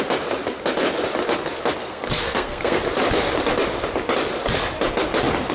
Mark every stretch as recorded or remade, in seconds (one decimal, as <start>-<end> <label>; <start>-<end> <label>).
0.0-1.8 recorded; 1.8-2.8 remade; 2.8-5.5 recorded